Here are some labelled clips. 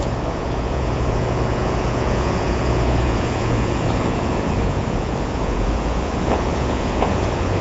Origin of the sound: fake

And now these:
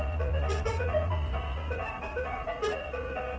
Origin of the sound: fake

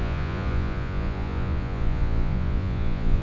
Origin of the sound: fake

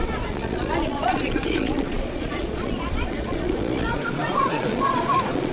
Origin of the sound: fake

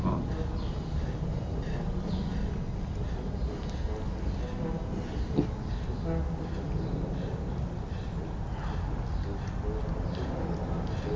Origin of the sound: real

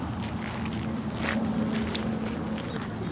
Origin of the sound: real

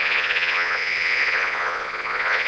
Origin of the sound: fake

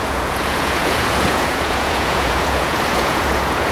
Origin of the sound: fake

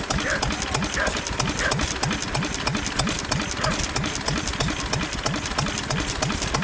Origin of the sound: real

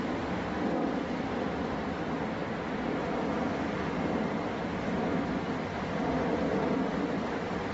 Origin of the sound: real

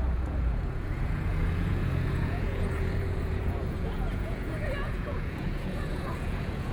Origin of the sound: fake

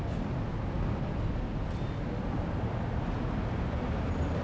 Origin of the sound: real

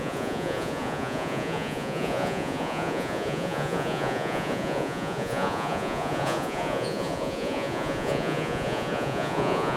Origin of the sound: fake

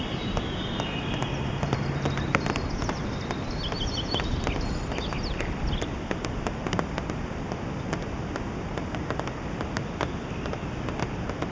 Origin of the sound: real